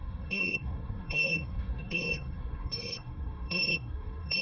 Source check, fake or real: fake